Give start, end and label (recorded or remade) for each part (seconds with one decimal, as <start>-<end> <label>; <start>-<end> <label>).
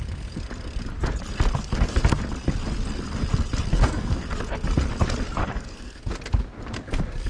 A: 0.0-3.7 recorded; 3.7-4.2 remade; 4.2-5.4 recorded; 5.4-6.0 remade; 6.0-7.3 recorded